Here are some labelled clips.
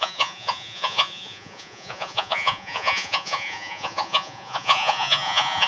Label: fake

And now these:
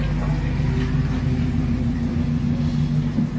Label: real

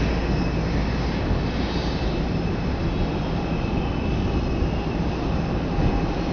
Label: real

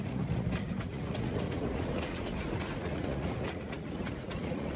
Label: fake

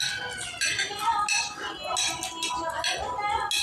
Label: real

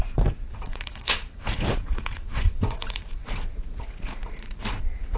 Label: fake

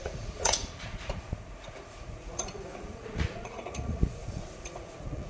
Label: fake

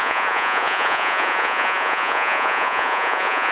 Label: fake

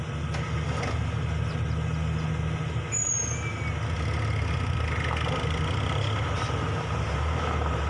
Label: real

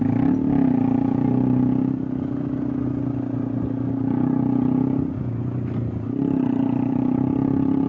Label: real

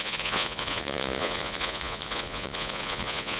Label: fake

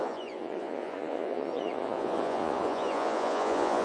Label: fake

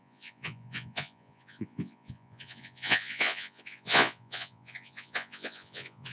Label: fake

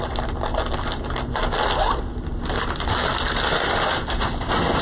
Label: real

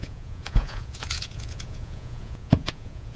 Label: fake